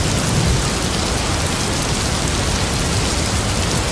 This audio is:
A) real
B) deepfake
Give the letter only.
A